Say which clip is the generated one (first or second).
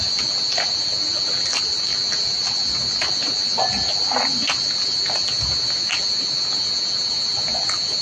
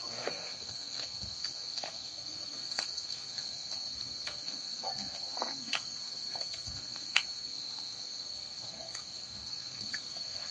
second